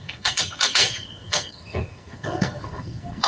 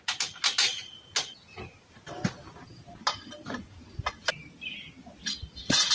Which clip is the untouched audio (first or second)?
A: second